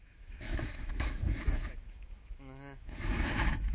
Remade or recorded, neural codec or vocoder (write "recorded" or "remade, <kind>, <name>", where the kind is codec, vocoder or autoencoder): remade, autoencoder, DAC-VAE